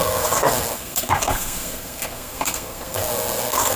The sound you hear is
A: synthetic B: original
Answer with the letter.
A